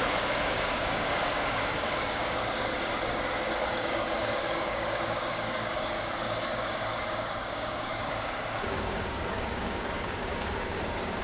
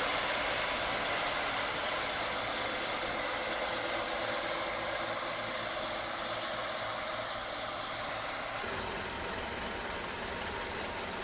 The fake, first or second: first